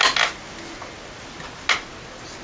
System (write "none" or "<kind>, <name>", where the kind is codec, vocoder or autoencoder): none